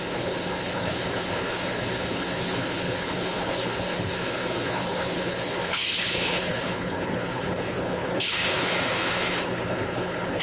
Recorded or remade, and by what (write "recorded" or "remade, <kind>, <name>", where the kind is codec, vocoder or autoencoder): remade, codec, HILCodec